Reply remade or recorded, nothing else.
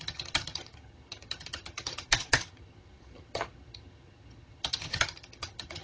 remade